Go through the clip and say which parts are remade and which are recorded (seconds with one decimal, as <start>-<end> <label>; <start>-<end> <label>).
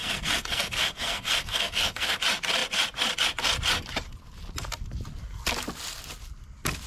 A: 0.0-2.2 remade; 2.2-6.9 recorded